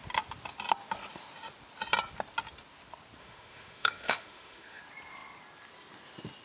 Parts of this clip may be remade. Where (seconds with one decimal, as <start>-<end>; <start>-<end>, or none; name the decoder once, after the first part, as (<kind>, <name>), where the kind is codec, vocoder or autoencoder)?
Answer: 3.2-4.8 (autoencoder, DAC-VAE)